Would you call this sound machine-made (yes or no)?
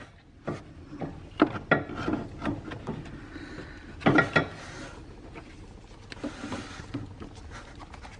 no